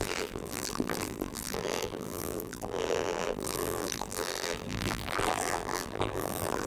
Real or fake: fake